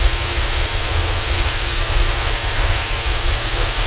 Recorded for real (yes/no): no